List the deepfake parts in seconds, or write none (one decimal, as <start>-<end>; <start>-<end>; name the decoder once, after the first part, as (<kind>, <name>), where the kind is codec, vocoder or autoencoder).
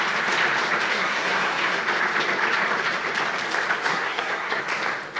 0.9-1.8 (codec, SNAC); 3.8-4.6